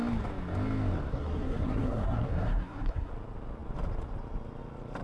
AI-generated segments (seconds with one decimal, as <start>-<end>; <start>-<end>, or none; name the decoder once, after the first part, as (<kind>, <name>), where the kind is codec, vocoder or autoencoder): 1.1-3.1 (codec, SNAC)